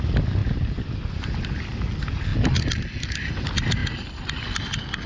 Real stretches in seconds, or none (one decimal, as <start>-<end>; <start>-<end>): 0.0-5.1